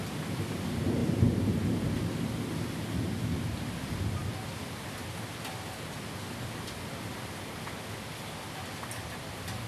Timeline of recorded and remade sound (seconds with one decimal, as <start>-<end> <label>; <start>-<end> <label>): 0.0-9.7 recorded